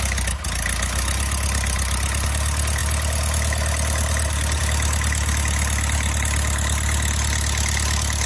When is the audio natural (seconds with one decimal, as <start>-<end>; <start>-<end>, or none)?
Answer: 0.0-8.3